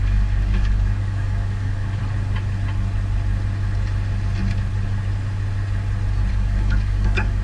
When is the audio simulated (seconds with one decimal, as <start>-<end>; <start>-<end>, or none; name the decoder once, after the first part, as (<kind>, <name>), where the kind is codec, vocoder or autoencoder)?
0.0-2.0 (codec, DAC); 6.3-7.4